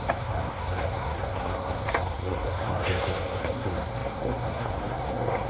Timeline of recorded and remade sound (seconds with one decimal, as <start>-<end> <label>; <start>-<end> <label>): 0.0-5.5 remade